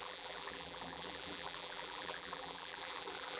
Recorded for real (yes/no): no